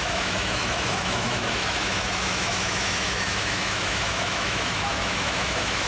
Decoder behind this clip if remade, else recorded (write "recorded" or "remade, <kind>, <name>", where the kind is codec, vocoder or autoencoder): remade, autoencoder, DAC-VAE